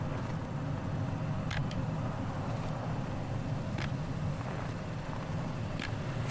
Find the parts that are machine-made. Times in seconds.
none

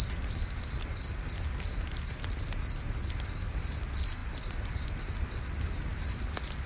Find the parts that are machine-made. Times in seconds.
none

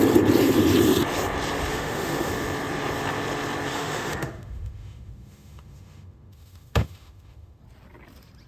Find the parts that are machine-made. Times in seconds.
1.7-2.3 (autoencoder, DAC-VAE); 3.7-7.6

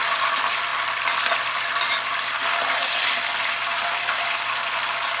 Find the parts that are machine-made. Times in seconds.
none

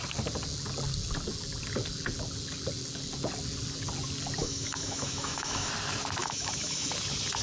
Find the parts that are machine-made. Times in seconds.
4.4-5.7 (autoencoder, DAC-VAE); 6.2-6.9

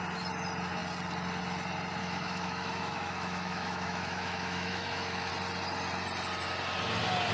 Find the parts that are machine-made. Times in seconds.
2.0-5.3 (autoencoder, DAC-VAE)

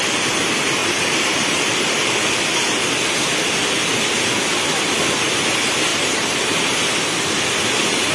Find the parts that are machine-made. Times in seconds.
0.8-2.4 (vocoder, BigVGAN v2); 5.9-7.0